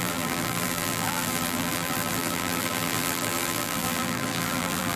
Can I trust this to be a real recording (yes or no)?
no